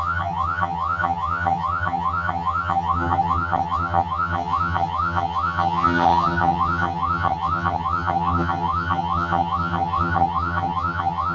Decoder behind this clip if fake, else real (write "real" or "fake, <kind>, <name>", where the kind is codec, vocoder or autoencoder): fake, vocoder, HiFi-GAN